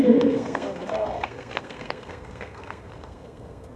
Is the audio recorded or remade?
remade